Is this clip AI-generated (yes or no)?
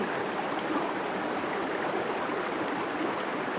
no